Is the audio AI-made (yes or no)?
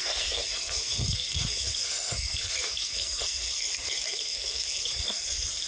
yes